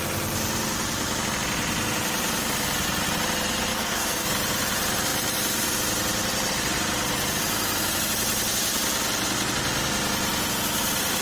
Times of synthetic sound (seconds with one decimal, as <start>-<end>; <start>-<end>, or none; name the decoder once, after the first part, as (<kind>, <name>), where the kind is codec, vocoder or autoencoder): 3.7-4.3 (codec, SNAC)